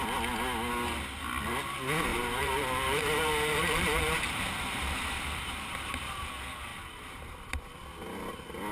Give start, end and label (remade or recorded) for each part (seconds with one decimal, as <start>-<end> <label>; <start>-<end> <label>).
0.0-2.1 recorded; 2.1-6.3 remade; 6.3-6.7 recorded; 6.7-7.6 remade; 7.6-8.7 recorded